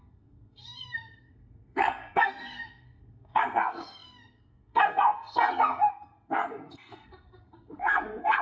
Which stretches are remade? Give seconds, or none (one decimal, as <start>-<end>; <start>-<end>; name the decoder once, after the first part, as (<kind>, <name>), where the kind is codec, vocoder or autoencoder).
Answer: 0.0-8.4 (codec, SNAC)